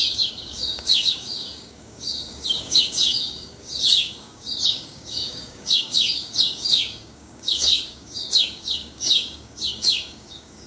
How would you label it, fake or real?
fake